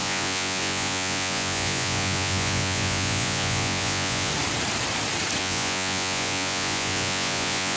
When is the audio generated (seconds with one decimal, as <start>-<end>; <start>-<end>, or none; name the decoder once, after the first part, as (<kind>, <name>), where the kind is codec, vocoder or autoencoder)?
0.0-4.3 (vocoder, Vocos); 5.4-7.8